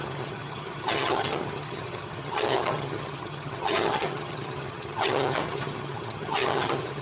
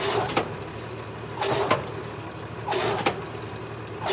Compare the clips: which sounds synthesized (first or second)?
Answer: first